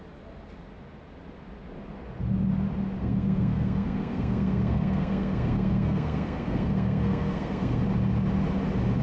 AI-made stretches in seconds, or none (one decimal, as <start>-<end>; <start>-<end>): 3.0-7.8